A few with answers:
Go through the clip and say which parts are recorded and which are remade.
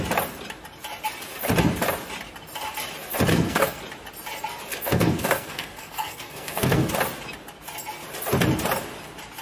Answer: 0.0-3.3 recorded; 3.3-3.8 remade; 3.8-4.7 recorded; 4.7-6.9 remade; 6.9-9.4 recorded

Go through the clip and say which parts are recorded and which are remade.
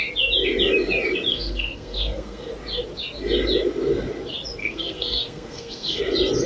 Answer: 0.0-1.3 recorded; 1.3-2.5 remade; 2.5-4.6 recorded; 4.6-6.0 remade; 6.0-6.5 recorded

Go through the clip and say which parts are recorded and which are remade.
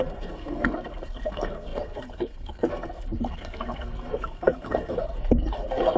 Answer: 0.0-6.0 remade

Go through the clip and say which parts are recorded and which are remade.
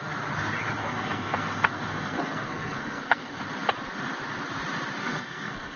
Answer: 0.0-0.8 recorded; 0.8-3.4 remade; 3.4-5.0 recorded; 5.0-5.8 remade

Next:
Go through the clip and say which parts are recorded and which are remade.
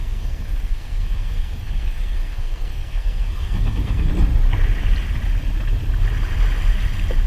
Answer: 0.0-4.1 remade; 4.1-7.3 recorded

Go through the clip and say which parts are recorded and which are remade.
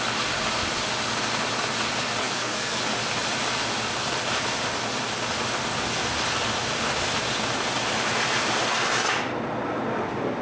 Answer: 0.0-2.2 recorded; 2.2-2.8 remade; 2.8-10.4 recorded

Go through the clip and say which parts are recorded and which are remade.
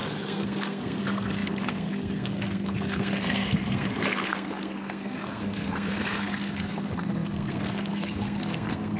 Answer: 0.0-9.0 remade